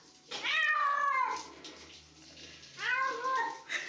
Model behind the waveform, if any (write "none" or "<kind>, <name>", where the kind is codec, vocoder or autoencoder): none